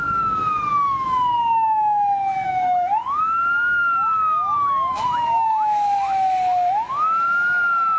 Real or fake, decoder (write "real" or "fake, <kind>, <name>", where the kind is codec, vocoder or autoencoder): fake, autoencoder, DAC-VAE